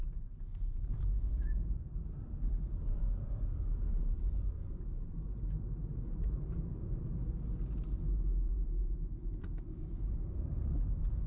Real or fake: fake